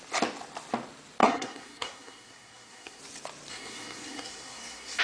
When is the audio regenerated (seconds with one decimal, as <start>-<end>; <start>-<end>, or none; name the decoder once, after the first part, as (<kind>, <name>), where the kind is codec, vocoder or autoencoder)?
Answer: 1.2-3.0 (codec, SNAC); 3.5-5.0

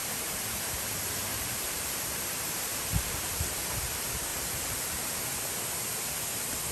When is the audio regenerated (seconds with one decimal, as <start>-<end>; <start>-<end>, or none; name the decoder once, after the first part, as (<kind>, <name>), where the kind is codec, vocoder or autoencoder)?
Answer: 0.0-0.7 (vocoder, BigVGAN v2); 1.3-3.3